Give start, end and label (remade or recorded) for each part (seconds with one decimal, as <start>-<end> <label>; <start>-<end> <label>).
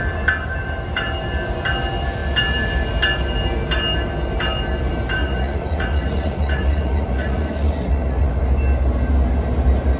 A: 0.0-5.2 recorded; 5.2-8.4 remade; 8.4-10.0 recorded